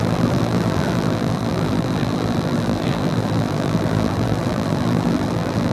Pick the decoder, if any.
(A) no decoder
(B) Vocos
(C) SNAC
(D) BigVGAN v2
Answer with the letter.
D